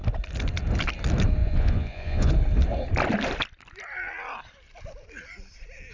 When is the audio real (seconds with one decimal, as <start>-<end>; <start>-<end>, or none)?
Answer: 0.0-1.4; 2.3-5.9